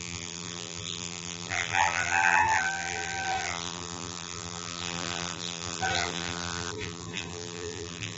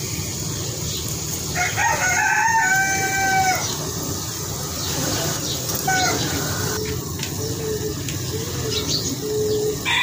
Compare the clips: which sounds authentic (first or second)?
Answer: second